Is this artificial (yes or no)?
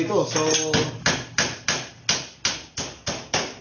no